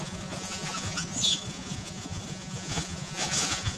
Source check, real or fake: fake